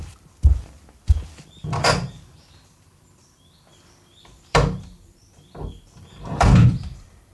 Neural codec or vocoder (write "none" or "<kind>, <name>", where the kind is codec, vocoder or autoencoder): vocoder, BigVGAN v2